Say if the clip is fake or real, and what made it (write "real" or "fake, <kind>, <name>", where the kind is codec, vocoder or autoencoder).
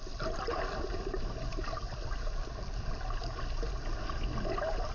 real